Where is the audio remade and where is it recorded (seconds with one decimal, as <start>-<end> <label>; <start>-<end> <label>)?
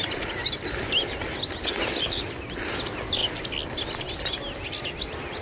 0.0-5.4 recorded